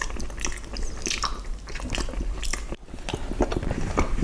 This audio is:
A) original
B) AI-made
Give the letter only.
A